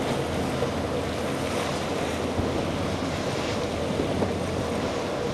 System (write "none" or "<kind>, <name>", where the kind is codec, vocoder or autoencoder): none